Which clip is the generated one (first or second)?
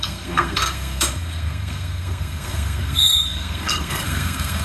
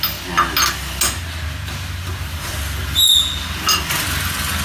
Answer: first